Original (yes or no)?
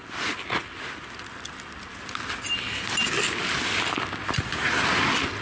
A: yes